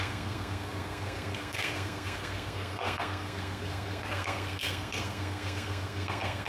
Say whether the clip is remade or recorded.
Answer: remade